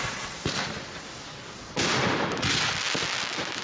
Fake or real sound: real